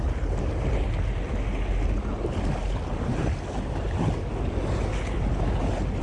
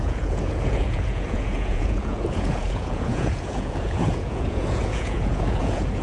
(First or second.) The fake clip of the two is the second